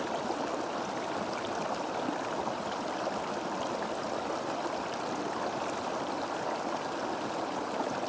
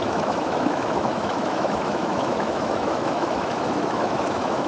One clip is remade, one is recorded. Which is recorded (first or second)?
first